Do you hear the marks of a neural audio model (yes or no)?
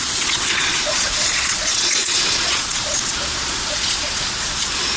yes